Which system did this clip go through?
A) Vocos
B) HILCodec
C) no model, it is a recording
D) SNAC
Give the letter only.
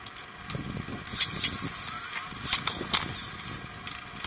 C